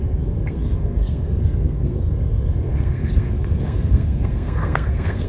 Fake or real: fake